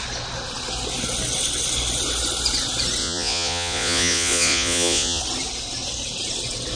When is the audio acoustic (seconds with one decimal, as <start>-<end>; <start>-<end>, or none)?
0.0-3.0; 5.2-6.7